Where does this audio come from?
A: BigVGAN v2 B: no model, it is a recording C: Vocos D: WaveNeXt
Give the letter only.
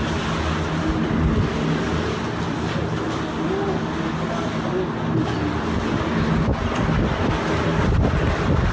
B